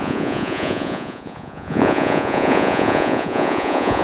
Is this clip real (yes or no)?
no